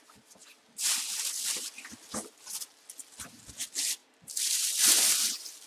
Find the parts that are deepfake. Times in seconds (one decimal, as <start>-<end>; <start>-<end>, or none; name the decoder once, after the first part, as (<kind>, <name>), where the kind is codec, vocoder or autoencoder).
0.4-1.6 (vocoder, BigVGAN v2); 4.0-5.1